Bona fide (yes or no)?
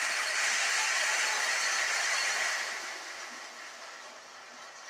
yes